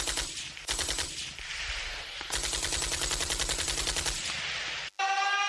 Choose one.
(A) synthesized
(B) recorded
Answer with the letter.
B